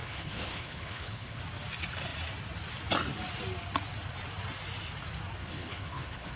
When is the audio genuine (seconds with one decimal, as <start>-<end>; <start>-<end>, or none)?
1.4-5.4